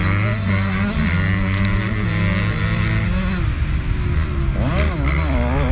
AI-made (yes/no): no